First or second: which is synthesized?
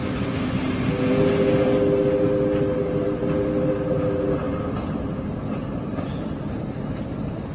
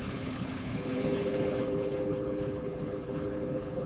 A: second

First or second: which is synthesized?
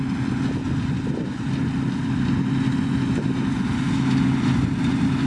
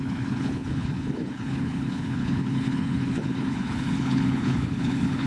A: second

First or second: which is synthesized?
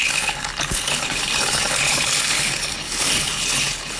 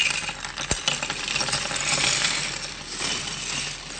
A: first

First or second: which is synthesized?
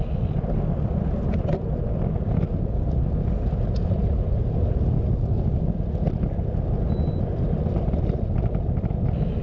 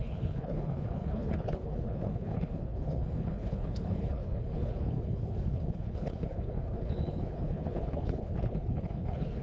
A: second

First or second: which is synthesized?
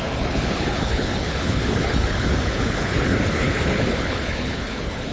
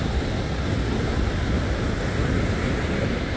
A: first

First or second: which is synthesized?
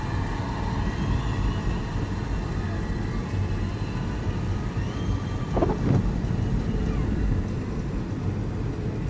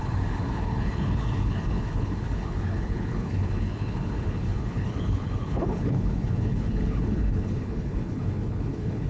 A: second